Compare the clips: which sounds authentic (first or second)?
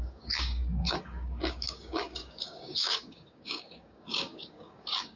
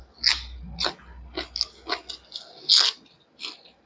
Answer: second